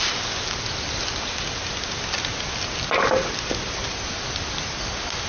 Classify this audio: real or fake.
real